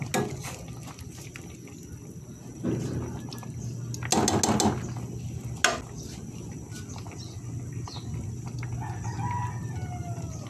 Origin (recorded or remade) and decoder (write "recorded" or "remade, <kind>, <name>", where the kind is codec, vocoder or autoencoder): recorded